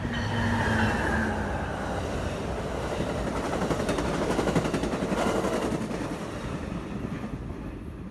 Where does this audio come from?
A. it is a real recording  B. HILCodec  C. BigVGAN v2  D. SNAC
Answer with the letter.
A